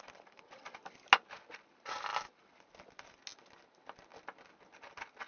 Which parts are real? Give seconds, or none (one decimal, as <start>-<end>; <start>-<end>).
0.0-5.3